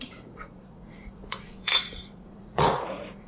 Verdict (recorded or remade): remade